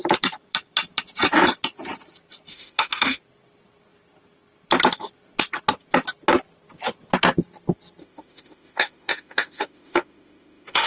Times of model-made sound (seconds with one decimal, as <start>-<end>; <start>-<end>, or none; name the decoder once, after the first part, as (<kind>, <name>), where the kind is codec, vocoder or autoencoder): 2.5-3.2 (autoencoder, DAC-VAE); 8.0-10.9